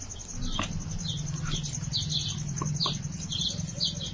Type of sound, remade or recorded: recorded